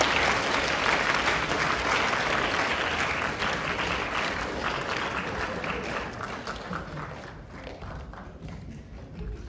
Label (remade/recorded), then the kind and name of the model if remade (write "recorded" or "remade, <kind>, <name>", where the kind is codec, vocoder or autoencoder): recorded